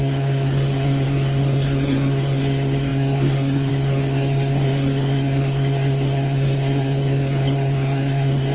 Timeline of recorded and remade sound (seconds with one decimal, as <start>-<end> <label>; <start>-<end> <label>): 0.0-8.5 remade